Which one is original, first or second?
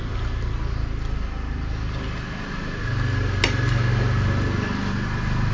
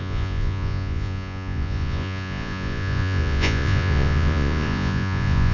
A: first